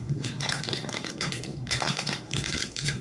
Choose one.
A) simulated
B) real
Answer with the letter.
A